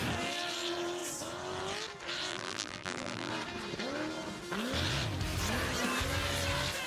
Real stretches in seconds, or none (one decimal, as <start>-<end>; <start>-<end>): 0.0-2.3; 3.3-6.9